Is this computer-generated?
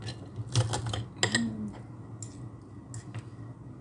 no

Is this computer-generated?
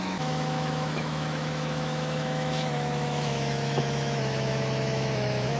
yes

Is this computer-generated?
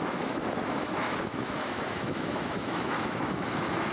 yes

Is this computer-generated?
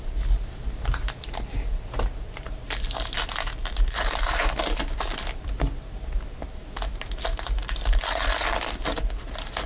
no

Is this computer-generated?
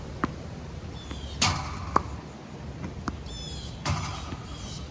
no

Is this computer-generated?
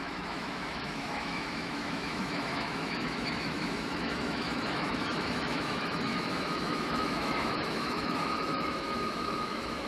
yes